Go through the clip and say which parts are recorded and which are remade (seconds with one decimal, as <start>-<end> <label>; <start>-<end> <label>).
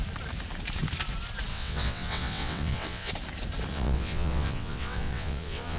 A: 0.0-1.5 recorded; 1.5-3.1 remade; 3.1-3.7 recorded; 3.7-5.8 remade